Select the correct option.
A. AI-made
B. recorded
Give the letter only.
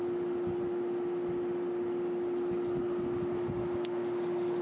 B